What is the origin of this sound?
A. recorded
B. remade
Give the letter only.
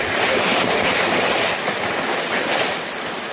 A